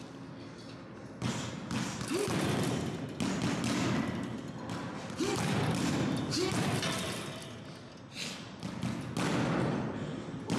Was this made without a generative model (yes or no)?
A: yes